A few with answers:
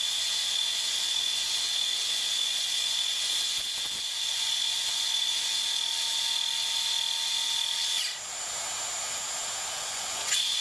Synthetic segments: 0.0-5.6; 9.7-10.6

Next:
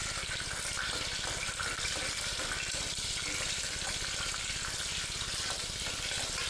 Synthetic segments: none

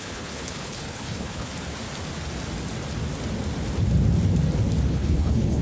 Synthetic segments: 0.0-1.5; 4.9-5.6